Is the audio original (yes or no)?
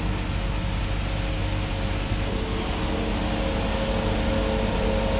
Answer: yes